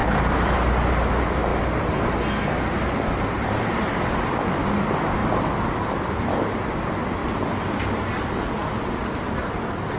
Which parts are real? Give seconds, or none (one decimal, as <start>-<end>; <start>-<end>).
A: 1.1-5.2; 6.2-7.2; 8.2-10.0